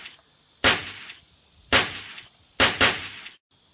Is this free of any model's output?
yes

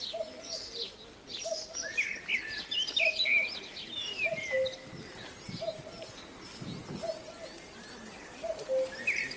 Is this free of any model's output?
yes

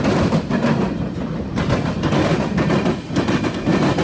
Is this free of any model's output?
yes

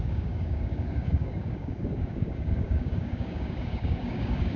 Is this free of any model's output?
no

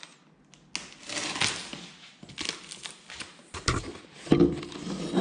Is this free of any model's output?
yes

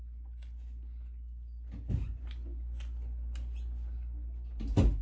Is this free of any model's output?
yes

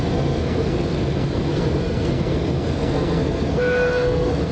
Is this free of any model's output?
no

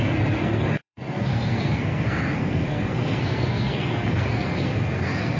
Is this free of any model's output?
no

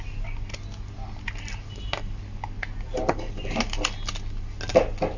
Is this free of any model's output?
yes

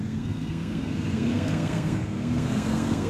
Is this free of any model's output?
no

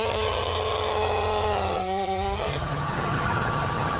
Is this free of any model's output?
no